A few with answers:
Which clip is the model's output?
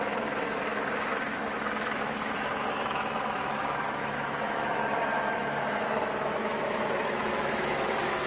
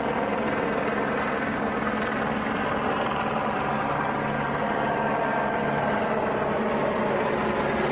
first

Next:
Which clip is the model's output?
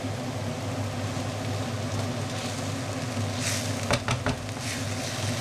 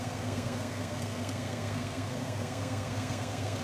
second